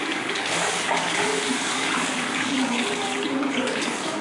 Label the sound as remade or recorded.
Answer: remade